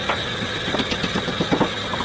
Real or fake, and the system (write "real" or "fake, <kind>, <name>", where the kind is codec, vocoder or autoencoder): real